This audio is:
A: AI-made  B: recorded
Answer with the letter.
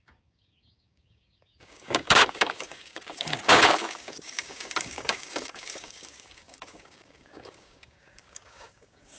A